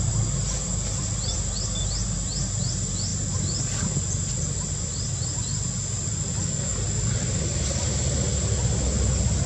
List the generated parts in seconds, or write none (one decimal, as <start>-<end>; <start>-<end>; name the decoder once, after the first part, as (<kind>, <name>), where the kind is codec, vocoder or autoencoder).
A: none